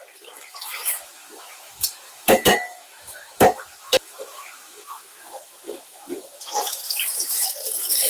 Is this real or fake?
fake